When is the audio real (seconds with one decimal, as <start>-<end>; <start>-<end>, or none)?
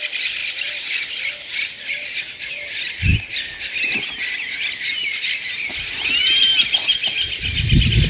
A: 0.0-0.4; 2.5-8.1